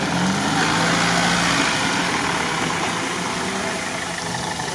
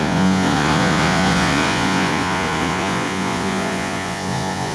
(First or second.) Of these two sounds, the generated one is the second